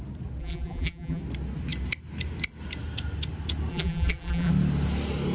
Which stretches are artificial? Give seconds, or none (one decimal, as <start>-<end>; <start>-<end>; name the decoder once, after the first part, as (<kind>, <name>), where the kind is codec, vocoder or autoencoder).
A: 0.4-1.2 (vocoder, BigVGAN v2); 3.7-4.5